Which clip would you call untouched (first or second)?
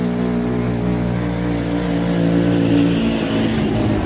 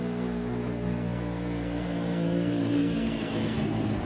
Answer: first